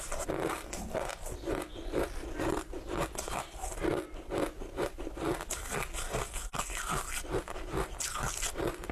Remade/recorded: recorded